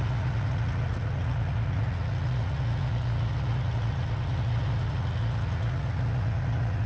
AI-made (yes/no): yes